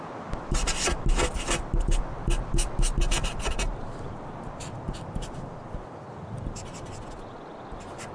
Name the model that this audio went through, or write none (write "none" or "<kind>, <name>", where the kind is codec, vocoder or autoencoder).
none